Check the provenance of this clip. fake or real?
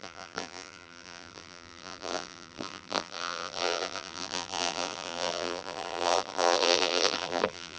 fake